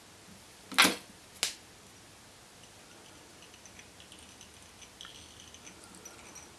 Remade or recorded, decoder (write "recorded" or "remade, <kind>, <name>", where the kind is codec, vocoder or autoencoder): recorded